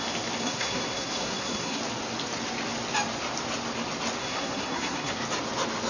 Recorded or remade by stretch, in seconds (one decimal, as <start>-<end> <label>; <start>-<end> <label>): 0.0-0.4 recorded; 0.4-1.8 remade; 1.8-4.2 recorded; 4.2-5.1 remade; 5.1-5.9 recorded